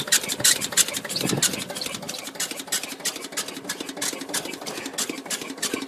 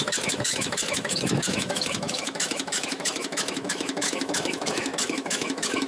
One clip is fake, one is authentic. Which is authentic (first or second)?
first